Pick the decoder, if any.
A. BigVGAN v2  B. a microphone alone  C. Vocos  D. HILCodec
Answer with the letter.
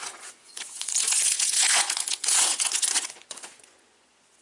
C